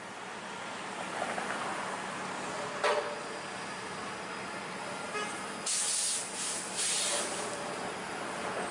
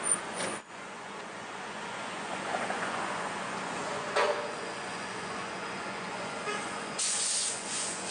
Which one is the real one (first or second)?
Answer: first